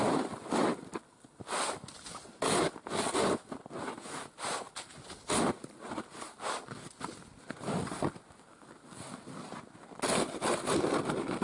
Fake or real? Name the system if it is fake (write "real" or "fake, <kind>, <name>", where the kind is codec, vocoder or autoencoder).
real